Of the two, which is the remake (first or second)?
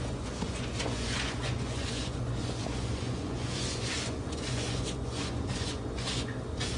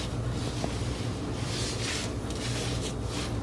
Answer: first